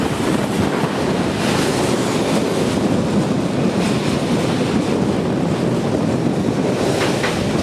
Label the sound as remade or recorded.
recorded